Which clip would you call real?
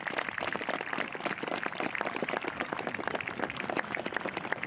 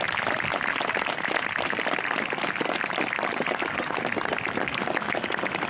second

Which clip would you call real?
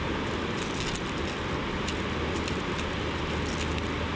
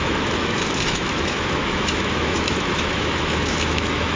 first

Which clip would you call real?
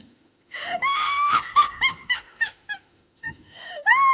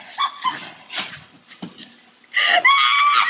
second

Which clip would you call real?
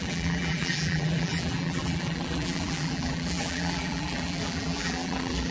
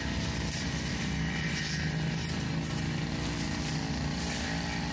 second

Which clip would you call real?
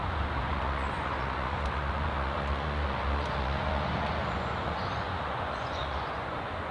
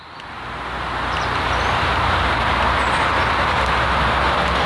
second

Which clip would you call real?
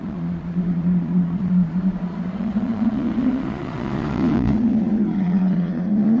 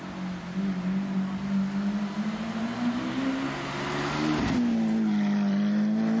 second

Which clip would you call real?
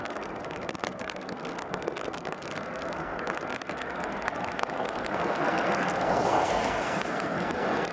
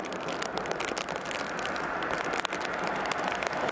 second